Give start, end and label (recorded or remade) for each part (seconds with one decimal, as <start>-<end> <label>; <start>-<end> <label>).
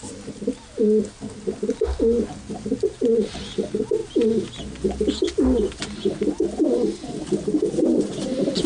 0.0-8.7 recorded